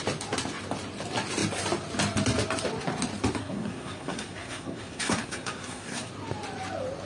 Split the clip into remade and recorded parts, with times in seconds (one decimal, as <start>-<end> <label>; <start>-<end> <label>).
0.0-3.4 recorded; 3.4-6.1 remade; 6.1-7.1 recorded